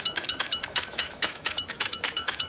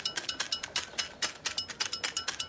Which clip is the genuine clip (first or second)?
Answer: second